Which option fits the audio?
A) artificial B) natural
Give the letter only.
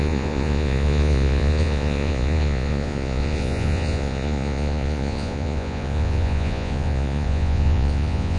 A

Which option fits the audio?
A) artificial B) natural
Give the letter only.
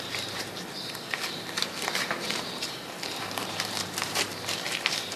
A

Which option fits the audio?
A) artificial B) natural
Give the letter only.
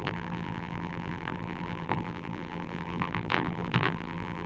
A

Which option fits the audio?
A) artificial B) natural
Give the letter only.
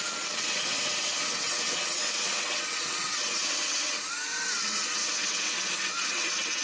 A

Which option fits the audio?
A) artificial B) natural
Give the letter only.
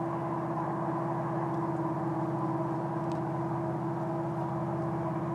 B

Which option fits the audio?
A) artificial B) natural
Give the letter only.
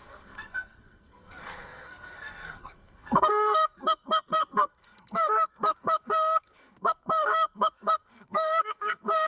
A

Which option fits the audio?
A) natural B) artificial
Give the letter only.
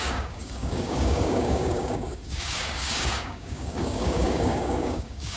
B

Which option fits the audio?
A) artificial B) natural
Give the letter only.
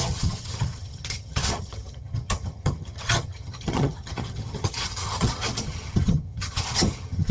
A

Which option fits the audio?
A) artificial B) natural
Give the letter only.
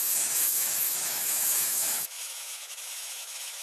A